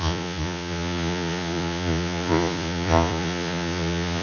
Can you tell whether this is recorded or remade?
remade